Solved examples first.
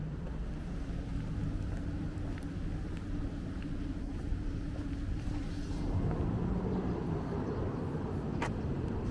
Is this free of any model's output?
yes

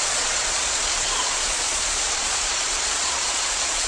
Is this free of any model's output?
no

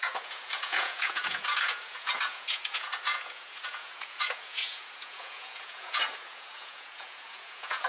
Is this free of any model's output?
no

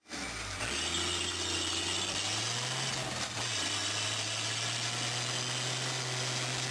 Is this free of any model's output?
yes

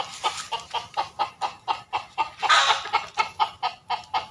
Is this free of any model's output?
yes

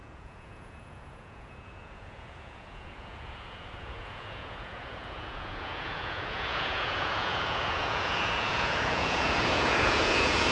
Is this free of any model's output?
no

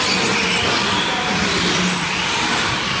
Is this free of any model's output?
yes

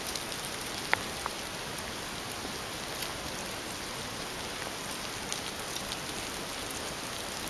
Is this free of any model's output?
yes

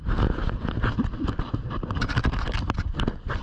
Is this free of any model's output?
yes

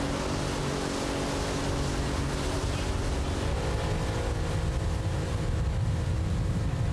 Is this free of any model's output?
yes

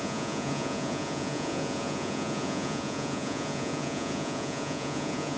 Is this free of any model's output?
no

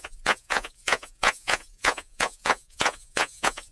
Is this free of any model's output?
no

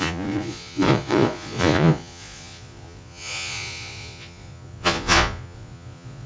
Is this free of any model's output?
no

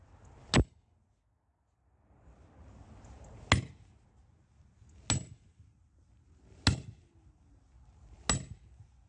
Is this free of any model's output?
yes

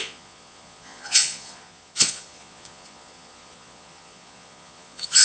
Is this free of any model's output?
no